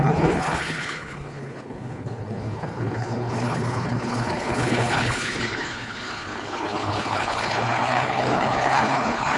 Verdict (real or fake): fake